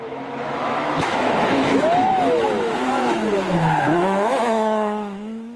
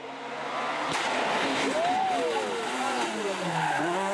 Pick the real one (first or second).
second